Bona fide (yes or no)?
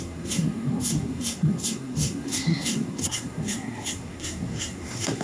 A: no